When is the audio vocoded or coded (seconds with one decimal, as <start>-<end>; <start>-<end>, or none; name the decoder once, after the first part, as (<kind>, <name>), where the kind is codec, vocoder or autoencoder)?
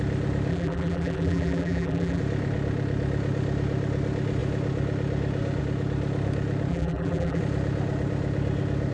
0.5-2.2 (vocoder, BigVGAN v2); 6.7-7.4